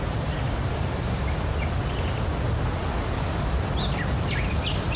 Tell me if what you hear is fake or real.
real